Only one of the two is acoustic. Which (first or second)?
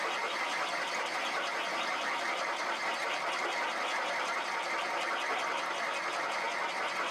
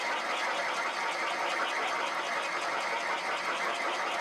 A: second